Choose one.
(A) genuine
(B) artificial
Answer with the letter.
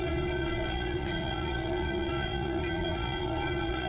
B